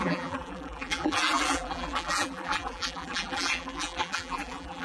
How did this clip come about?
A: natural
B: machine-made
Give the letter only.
B